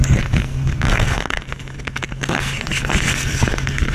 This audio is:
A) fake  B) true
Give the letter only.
A